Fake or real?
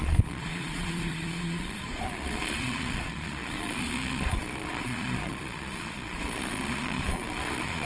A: fake